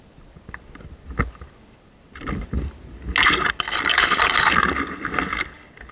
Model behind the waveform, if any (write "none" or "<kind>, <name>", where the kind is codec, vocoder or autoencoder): none